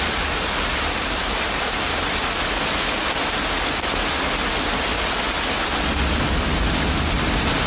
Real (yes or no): yes